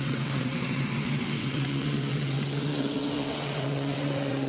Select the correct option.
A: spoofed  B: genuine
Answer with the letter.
A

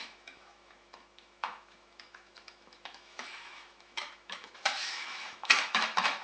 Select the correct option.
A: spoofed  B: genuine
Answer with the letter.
A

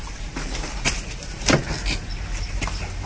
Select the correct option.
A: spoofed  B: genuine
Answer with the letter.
B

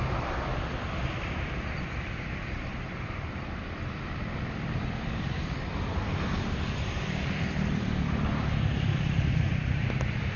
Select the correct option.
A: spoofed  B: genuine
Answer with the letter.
A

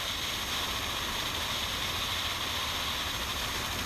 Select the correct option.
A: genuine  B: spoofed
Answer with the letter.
A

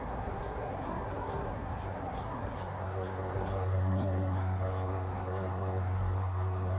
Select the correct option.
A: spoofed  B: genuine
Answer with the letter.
A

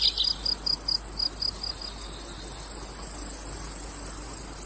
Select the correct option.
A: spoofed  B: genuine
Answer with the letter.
B